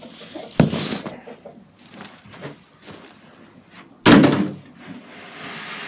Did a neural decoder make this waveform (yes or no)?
no